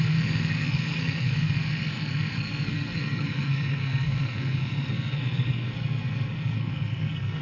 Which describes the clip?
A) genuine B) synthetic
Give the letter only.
B